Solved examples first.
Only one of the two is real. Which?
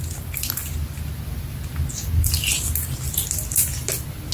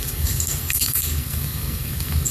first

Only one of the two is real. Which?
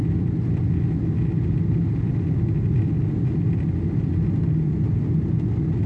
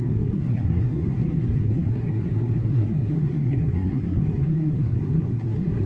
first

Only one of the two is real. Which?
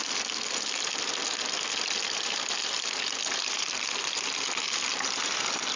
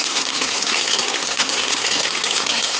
first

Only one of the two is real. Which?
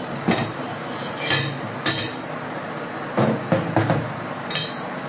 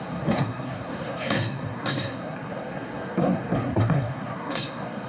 first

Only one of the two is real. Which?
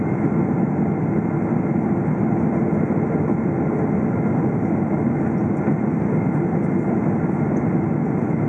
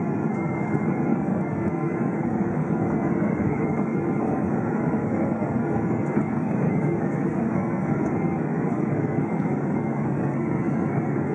first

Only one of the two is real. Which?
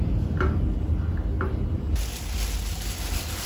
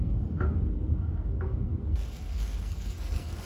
first